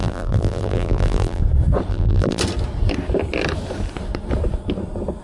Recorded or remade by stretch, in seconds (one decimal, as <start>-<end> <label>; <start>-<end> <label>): 0.0-1.4 remade; 1.4-1.9 recorded; 1.9-2.4 remade; 2.4-5.2 recorded